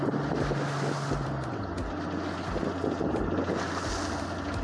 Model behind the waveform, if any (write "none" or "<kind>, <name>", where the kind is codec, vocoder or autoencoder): none